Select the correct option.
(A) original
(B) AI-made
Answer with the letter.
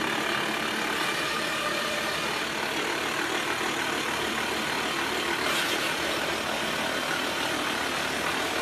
A